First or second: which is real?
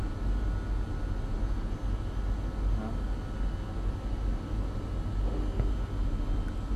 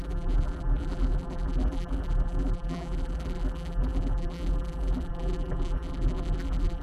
first